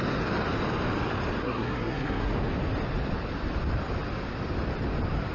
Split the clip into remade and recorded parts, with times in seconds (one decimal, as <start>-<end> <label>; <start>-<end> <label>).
0.0-1.4 recorded; 1.4-2.3 remade; 2.3-5.3 recorded